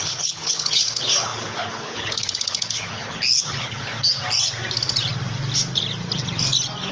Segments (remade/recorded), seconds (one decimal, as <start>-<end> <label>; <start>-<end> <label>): 0.0-3.9 remade; 3.9-6.9 recorded